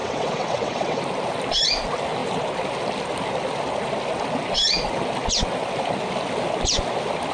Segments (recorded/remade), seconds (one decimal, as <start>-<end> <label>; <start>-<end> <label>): 0.0-1.0 remade; 1.0-7.3 recorded